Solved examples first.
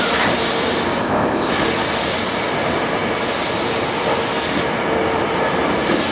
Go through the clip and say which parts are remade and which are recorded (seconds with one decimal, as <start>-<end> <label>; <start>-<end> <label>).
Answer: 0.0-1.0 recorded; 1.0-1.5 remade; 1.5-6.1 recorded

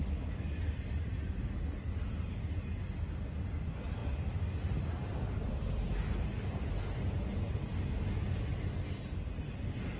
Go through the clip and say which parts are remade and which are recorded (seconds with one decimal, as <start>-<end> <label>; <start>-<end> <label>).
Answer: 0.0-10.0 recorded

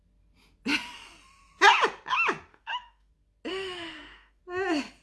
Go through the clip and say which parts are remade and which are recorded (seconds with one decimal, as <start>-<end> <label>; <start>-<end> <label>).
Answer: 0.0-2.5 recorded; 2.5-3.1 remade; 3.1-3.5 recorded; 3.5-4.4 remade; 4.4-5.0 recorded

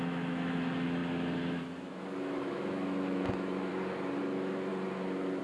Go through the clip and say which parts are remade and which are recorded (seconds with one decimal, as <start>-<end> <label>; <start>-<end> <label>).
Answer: 0.0-3.7 remade; 3.7-4.2 recorded; 4.2-4.7 remade; 4.7-5.4 recorded

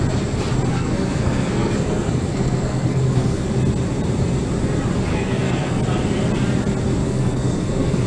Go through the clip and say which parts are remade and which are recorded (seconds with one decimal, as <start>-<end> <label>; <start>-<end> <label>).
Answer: 0.0-0.7 recorded; 0.7-3.5 remade; 3.5-5.1 recorded; 5.1-5.8 remade; 5.8-7.0 recorded; 7.0-8.1 remade

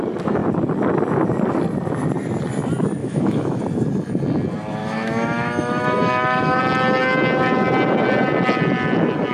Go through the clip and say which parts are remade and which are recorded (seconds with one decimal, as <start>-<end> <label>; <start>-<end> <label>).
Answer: 0.0-3.0 recorded; 3.0-3.6 remade; 3.6-4.8 recorded; 4.8-6.6 remade; 6.6-9.3 recorded

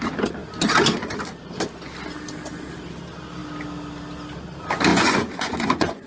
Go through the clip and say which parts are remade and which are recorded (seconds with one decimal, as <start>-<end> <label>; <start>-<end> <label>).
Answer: 0.0-4.9 recorded; 4.9-6.1 remade